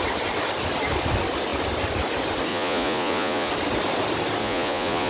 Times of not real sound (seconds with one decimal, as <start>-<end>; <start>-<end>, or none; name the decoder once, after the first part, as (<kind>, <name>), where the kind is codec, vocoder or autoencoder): 2.5-3.5 (vocoder, Vocos); 4.4-5.1